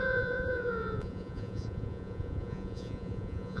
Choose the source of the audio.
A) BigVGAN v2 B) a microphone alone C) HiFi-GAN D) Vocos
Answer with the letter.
D